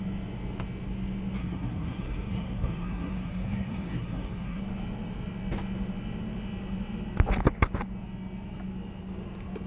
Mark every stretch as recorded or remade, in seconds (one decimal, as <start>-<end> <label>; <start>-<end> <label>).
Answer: 0.0-1.4 recorded; 1.4-4.6 remade; 4.6-9.7 recorded

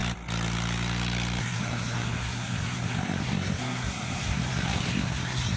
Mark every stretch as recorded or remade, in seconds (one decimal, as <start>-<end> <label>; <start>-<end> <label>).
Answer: 0.0-1.4 recorded; 1.4-5.6 remade